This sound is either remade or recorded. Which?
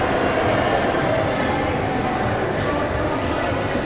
recorded